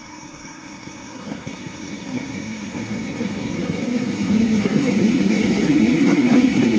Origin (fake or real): fake